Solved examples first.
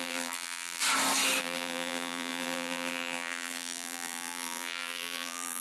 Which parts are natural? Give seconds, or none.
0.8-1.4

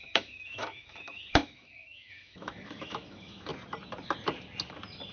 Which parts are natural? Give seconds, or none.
3.5-5.1

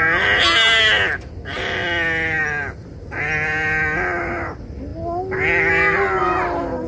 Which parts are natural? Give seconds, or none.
0.0-6.9